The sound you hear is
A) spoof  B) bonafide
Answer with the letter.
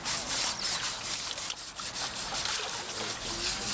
B